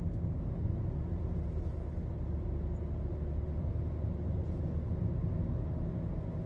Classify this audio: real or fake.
real